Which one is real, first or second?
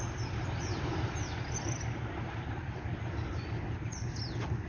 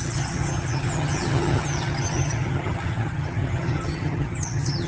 first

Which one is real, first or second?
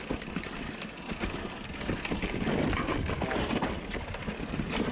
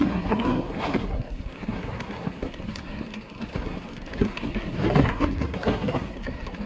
first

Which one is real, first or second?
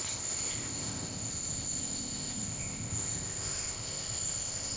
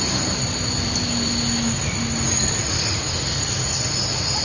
second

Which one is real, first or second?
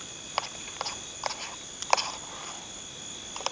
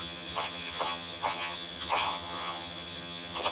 first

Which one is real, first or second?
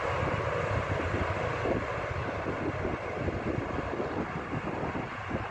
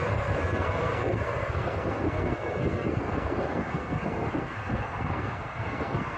first